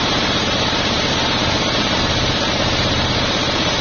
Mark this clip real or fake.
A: fake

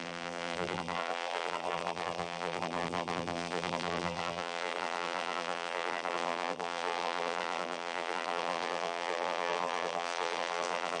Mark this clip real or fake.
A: fake